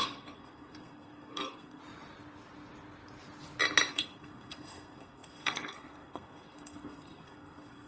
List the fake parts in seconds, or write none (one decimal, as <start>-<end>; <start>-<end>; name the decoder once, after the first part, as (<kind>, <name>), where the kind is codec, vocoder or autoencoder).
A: 0.0-1.8 (codec, SNAC); 3.9-7.9